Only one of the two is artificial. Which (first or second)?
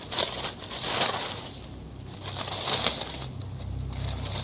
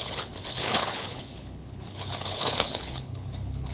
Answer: second